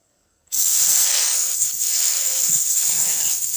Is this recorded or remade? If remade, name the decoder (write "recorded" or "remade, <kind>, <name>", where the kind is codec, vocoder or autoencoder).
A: remade, codec, SNAC